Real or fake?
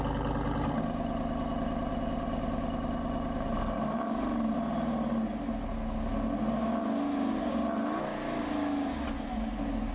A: real